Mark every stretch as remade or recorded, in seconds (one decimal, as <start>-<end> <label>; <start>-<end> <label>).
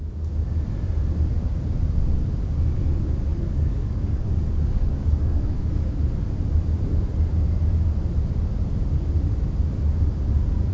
0.0-3.3 recorded; 3.3-6.0 remade; 6.0-10.7 recorded